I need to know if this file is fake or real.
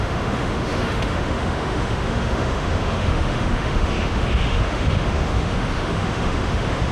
fake